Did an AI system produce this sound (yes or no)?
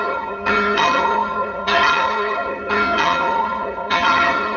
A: yes